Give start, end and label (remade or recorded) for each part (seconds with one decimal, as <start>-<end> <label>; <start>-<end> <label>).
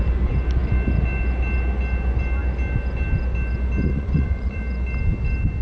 0.0-3.9 recorded; 3.9-4.6 remade; 4.6-5.6 recorded